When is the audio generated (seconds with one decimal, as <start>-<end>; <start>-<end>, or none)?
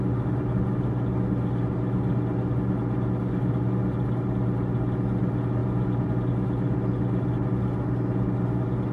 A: none